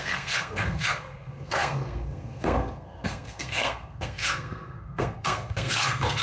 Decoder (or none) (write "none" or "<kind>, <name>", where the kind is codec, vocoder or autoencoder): codec, SNAC